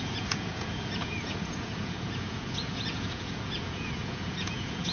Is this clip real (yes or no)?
no